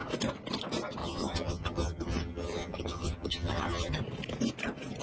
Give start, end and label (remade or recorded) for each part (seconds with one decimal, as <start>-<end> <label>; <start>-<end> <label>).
0.0-1.0 recorded; 1.0-4.0 remade; 4.0-5.0 recorded